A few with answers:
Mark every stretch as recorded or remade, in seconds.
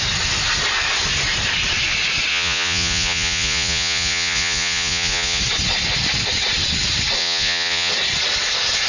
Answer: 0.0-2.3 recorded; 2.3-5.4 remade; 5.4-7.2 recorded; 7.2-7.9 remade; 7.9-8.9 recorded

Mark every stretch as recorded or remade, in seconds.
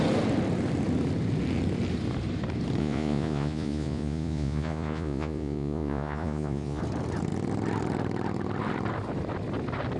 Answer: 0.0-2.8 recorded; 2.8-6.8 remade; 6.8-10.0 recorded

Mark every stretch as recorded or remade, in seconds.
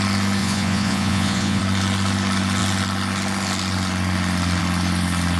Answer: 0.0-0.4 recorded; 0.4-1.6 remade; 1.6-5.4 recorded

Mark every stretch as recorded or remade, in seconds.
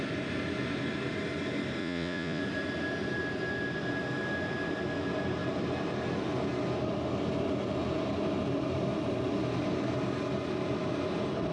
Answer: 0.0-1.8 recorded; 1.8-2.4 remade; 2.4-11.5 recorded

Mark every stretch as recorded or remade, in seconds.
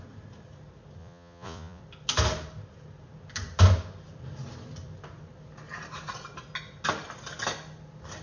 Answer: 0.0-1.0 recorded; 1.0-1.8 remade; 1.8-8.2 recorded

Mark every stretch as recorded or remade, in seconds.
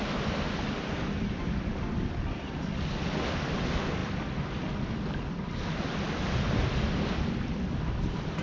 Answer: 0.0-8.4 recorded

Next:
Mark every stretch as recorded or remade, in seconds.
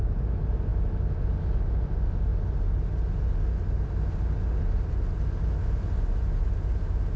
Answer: 0.0-7.2 recorded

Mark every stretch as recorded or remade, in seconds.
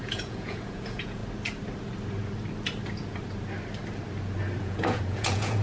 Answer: 0.0-1.2 remade; 1.2-4.6 recorded; 4.6-5.6 remade